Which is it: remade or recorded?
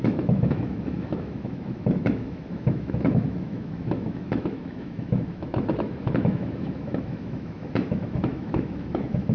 remade